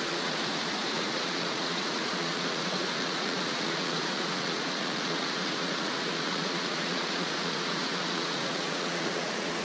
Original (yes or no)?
no